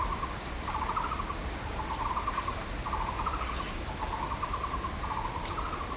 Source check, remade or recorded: recorded